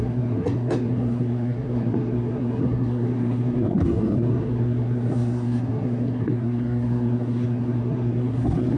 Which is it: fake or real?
fake